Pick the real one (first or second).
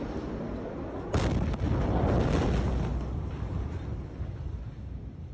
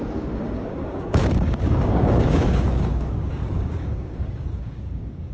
first